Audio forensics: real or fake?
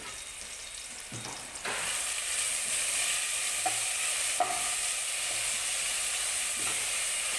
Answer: real